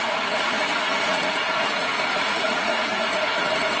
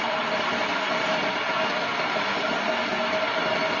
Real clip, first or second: second